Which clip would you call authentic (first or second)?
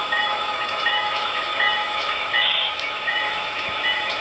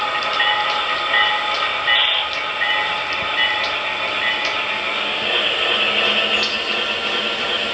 second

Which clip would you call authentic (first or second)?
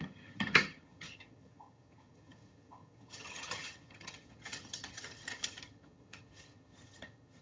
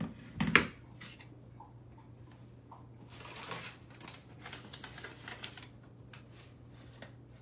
second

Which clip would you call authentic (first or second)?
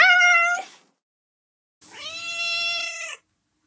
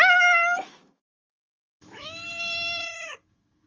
first